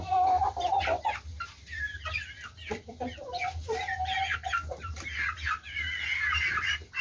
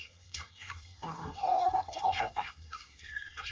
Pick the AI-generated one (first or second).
second